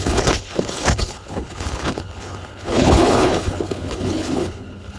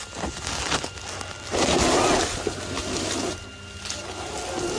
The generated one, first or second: first